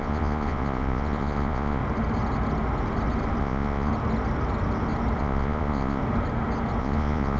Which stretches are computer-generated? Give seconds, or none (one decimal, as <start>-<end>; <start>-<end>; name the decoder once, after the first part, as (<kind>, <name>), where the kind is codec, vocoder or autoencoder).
0.0-1.8 (vocoder, Vocos); 3.4-3.9; 5.2-6.0; 6.8-7.4